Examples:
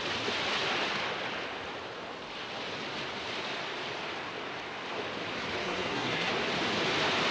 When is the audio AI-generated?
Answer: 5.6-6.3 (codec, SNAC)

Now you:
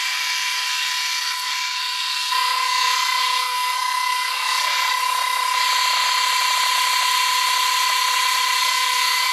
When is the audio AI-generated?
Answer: 0.0-5.0 (codec, SNAC); 8.6-9.3

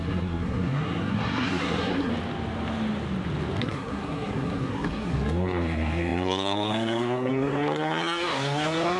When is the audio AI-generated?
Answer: 0.0-2.1 (codec, SNAC); 3.6-9.0

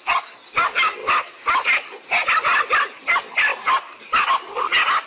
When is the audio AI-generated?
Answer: none

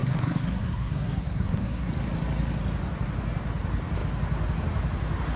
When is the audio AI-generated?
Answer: 0.0-1.9 (codec, SNAC)